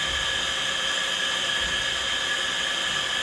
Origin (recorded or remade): recorded